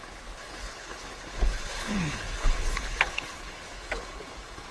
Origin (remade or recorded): remade